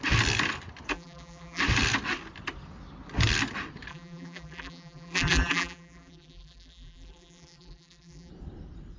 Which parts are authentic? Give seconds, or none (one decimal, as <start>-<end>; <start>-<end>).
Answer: 0.0-0.9; 1.6-3.9; 8.3-9.0